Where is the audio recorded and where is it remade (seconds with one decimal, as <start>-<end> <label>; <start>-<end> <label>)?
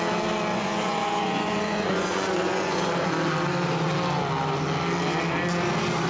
0.0-0.5 recorded; 0.5-2.9 remade; 2.9-6.1 recorded